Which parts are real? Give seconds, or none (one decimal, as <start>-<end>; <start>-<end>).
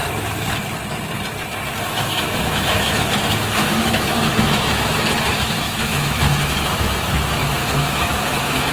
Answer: 0.0-1.8